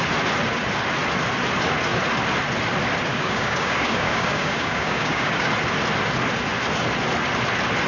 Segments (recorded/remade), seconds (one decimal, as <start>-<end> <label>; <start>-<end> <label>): 0.0-3.1 recorded; 3.1-5.5 remade; 5.5-7.9 recorded